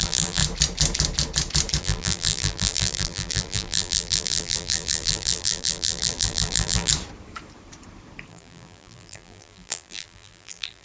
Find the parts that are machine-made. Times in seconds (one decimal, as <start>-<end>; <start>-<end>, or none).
0.0-0.4; 1.8-6.9; 8.3-10.8